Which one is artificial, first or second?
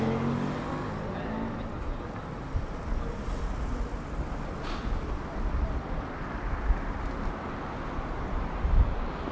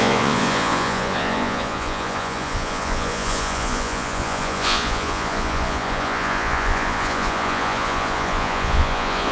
second